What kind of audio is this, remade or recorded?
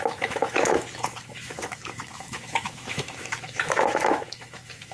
remade